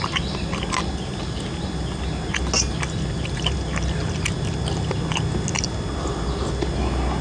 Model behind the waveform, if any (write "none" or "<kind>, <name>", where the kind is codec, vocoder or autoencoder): none